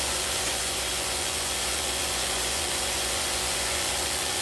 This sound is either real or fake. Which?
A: fake